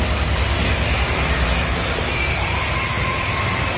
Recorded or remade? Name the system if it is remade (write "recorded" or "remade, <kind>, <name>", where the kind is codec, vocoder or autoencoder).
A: recorded